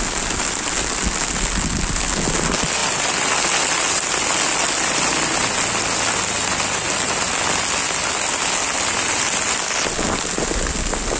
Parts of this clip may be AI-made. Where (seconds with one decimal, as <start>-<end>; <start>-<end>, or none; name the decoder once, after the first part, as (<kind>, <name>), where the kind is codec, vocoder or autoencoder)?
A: none